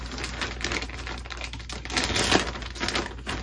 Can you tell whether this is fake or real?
real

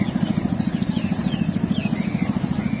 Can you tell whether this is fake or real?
real